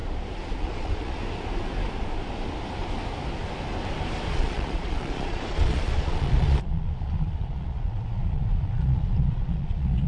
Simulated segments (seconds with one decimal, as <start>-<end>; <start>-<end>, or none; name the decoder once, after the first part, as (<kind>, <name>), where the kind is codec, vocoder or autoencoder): 0.6-1.2 (vocoder, Vocos); 4.3-10.1